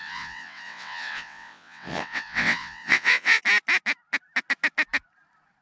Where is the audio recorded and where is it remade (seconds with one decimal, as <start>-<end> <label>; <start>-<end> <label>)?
0.0-3.4 remade; 3.4-5.6 recorded